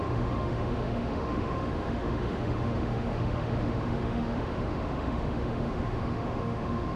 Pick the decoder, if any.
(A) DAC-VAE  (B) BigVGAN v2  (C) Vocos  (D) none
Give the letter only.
A